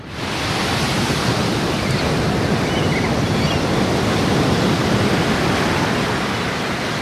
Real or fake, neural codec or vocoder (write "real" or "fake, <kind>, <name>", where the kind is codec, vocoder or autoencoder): real